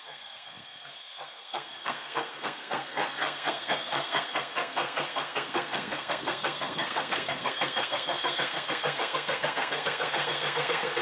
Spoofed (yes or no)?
yes